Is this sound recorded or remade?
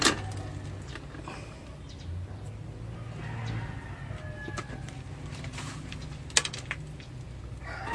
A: recorded